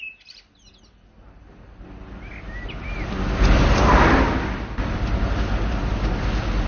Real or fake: real